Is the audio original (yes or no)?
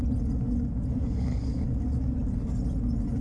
yes